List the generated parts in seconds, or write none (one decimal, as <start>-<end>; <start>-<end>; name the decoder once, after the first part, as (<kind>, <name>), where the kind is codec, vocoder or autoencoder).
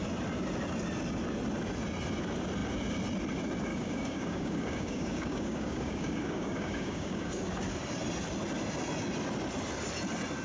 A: 3.7-7.3 (codec, DAC)